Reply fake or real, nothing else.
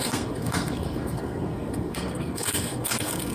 fake